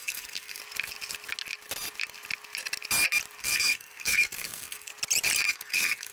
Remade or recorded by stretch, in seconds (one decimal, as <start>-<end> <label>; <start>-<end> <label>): 0.0-0.6 remade; 0.6-3.4 recorded; 3.4-4.9 remade; 4.9-5.5 recorded; 5.5-6.1 remade